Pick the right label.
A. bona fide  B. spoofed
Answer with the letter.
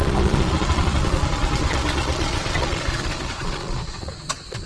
B